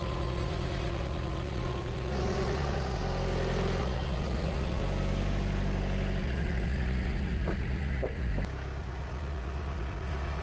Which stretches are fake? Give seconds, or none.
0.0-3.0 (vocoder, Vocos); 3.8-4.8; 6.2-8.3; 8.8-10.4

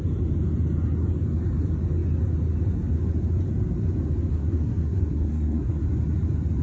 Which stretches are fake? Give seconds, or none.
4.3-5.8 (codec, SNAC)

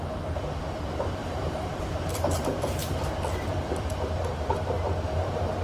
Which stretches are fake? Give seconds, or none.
1.2-2.1 (vocoder, BigVGAN v2)

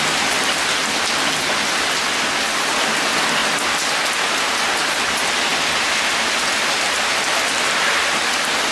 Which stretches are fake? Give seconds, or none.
none

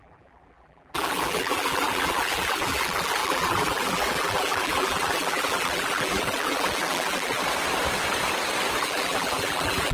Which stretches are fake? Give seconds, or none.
0.0-7.4 (vocoder, BigVGAN v2); 8.8-9.9

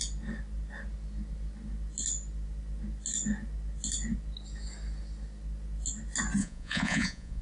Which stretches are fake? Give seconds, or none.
6.4-7.4 (vocoder, Vocos)

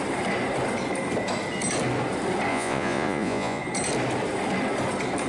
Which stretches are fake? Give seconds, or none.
2.5-3.6 (vocoder, Vocos)

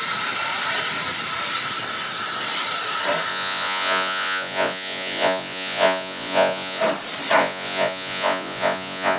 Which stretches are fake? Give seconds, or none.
3.3-6.8 (vocoder, Vocos); 7.4-9.2